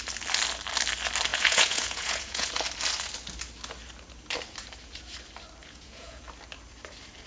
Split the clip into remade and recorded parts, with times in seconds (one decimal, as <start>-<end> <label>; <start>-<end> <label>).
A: 0.0-1.3 recorded; 1.3-2.5 remade; 2.5-5.6 recorded; 5.6-6.2 remade; 6.2-7.3 recorded